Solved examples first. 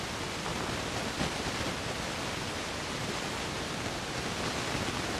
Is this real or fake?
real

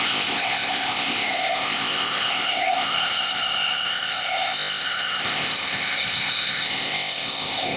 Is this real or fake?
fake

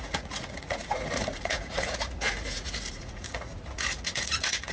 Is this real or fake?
fake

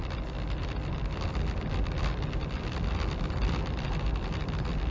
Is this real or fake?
real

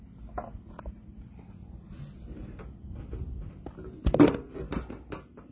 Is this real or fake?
real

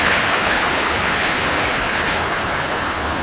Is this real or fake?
fake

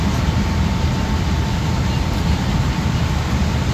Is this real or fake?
real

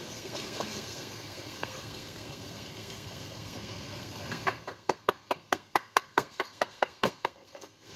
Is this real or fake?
fake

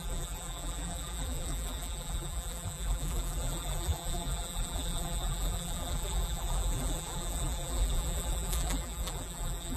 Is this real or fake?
fake